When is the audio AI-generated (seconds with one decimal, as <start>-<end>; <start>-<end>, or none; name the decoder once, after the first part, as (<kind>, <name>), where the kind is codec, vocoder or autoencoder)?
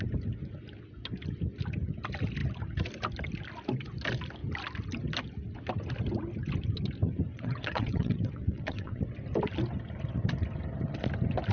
7.3-9.0 (vocoder, WaveNeXt)